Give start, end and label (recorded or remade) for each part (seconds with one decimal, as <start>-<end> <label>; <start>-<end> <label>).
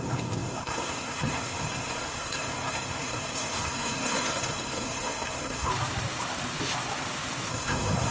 0.0-5.7 remade; 5.7-7.5 recorded; 7.5-8.1 remade